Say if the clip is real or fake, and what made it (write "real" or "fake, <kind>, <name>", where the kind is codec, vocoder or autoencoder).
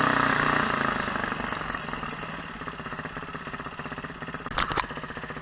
real